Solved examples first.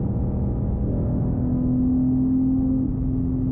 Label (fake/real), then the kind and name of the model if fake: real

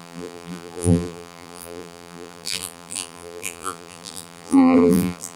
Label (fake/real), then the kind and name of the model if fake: fake, vocoder, BigVGAN v2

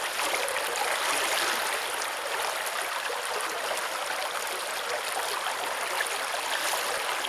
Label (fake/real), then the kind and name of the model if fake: real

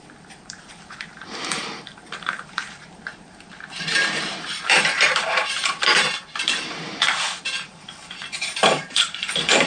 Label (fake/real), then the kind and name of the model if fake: fake, vocoder, BigVGAN v2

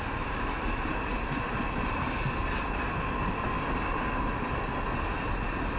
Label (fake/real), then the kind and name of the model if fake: real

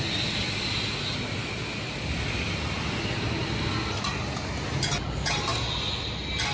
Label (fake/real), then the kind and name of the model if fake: real